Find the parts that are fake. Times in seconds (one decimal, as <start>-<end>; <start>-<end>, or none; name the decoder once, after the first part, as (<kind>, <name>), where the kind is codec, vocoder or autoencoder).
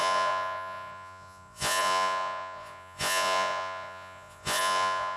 0.0-5.2 (vocoder, Vocos)